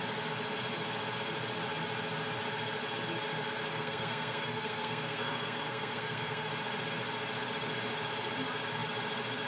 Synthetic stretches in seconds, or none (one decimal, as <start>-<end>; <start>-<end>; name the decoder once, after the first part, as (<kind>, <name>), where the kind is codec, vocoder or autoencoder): 3.7-6.5 (codec, SNAC)

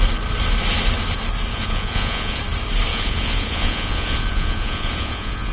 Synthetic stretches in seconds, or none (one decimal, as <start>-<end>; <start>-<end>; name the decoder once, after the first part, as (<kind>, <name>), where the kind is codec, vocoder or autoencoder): 1.5-2.4 (vocoder, Vocos); 2.9-5.5